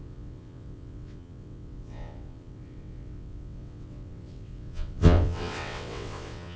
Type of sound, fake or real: fake